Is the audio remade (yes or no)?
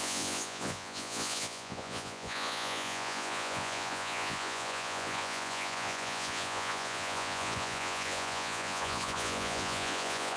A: yes